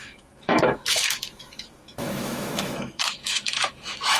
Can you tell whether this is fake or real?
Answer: fake